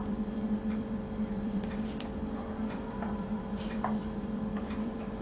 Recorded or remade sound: remade